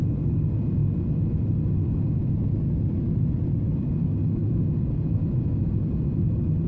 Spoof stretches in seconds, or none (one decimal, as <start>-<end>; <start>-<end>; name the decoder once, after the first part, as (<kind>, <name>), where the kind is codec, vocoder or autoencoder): none